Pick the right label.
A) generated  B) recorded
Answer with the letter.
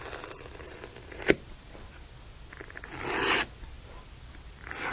B